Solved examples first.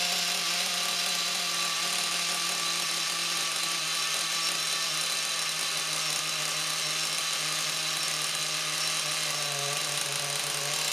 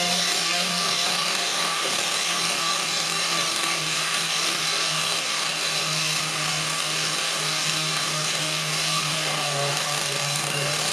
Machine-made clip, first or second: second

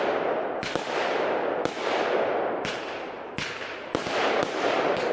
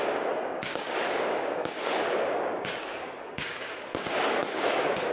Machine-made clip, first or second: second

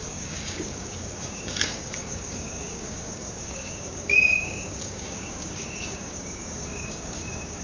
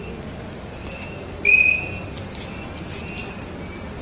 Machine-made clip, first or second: first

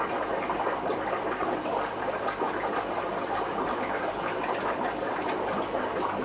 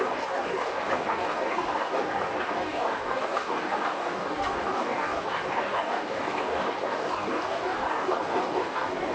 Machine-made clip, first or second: second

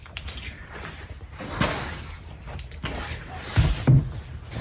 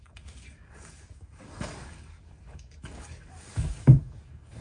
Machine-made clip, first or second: second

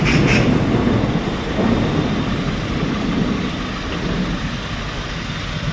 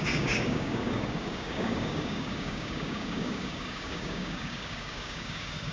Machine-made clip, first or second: second